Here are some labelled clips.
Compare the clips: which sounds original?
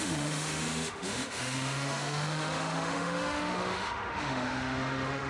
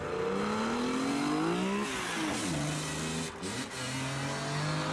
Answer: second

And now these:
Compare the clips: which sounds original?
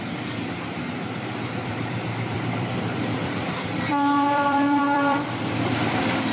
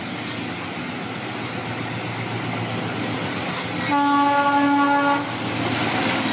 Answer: second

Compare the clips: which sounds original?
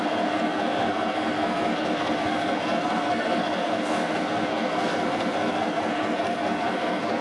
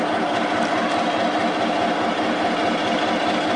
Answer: second